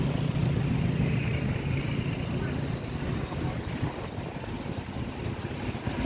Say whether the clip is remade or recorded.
recorded